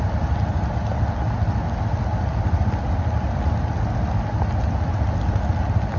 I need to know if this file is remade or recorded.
recorded